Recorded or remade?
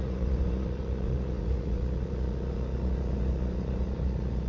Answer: remade